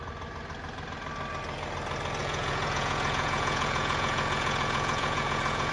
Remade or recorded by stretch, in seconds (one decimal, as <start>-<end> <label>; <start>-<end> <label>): 0.0-2.2 recorded; 2.2-5.7 remade